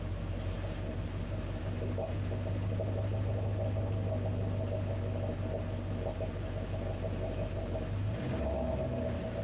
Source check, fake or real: real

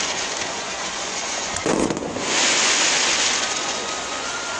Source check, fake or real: fake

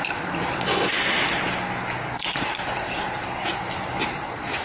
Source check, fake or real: real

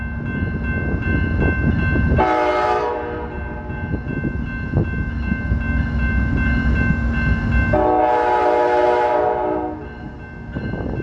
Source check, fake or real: real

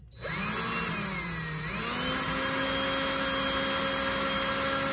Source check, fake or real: real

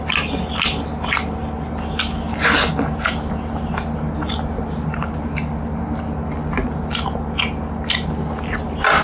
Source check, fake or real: real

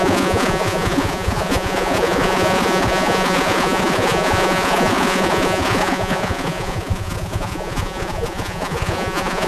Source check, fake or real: fake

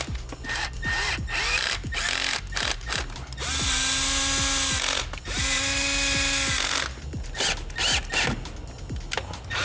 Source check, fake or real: real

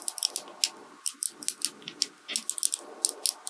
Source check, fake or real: real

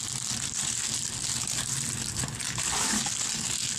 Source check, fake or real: real